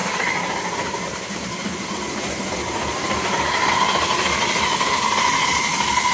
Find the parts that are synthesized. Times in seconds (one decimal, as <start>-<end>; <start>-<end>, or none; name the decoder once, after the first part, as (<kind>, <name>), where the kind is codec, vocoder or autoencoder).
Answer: 0.0-3.7 (vocoder, BigVGAN v2)